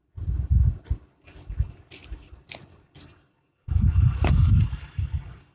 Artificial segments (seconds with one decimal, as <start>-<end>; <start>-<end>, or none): none